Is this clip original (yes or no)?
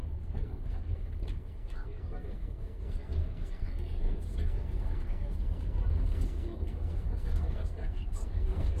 no